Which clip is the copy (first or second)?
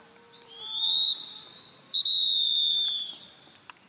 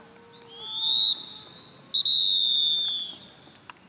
first